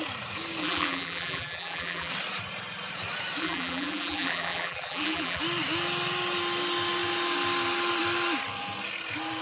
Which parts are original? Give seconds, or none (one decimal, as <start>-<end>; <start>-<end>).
0.0-0.6; 2.1-3.4; 5.4-9.4